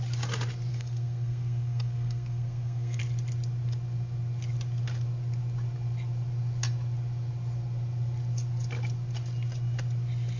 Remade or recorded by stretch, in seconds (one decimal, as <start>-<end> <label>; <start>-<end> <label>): 0.0-0.7 recorded; 0.7-3.0 remade; 3.0-10.4 recorded